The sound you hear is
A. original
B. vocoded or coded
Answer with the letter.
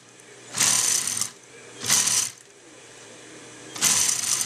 B